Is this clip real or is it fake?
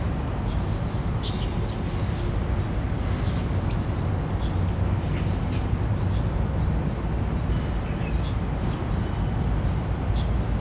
real